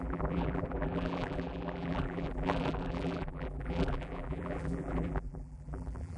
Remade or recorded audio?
remade